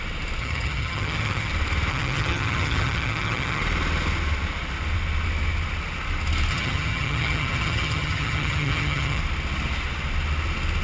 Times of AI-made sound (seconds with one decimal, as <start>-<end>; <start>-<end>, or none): 0.4-1.5; 1.9-3.6; 6.5-9.2